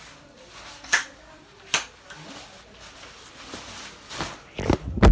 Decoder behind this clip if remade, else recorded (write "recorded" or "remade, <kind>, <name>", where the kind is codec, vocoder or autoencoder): recorded